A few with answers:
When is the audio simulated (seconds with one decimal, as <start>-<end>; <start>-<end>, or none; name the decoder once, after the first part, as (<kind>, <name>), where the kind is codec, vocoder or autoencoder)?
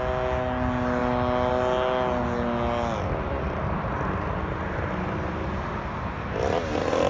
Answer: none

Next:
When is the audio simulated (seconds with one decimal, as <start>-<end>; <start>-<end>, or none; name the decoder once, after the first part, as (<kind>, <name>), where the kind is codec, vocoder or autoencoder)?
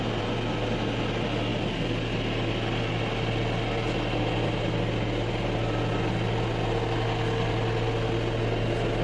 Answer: none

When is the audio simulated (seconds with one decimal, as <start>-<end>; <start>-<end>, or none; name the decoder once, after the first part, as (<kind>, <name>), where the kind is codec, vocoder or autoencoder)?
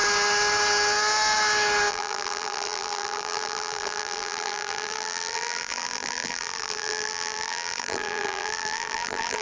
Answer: 1.9-9.4 (vocoder, BigVGAN v2)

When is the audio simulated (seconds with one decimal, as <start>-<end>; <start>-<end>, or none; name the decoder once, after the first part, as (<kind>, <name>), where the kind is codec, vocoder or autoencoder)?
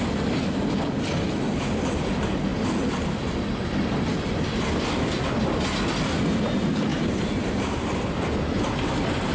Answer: 6.9-7.9 (vocoder, BigVGAN v2)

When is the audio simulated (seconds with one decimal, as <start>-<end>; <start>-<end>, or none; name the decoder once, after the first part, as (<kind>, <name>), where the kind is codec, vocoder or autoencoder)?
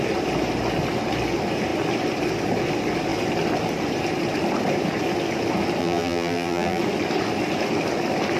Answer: 5.8-6.8 (vocoder, BigVGAN v2)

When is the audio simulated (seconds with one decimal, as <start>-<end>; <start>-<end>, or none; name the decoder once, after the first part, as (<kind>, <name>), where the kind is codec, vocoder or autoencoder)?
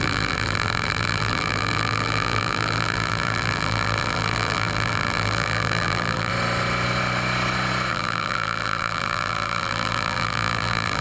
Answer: 0.0-6.3 (vocoder, BigVGAN v2); 7.9-11.0